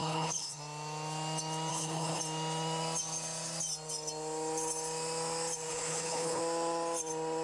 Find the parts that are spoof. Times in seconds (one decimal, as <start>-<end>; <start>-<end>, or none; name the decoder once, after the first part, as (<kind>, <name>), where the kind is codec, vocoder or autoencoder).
0.0-0.6 (codec, HILCodec); 1.7-2.2; 5.7-6.4